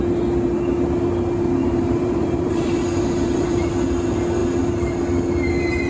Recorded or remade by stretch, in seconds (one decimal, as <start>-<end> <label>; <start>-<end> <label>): 0.0-1.6 recorded; 1.6-3.7 remade; 3.7-5.9 recorded